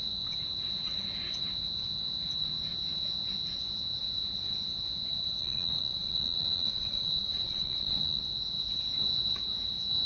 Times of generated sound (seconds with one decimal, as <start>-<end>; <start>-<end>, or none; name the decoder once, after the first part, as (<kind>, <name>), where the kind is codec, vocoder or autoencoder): 5.4-8.2 (vocoder, Vocos)